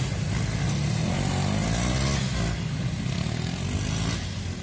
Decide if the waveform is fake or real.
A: real